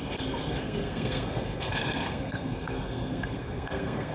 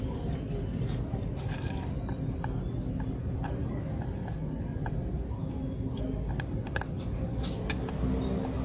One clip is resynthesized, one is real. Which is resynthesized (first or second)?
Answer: first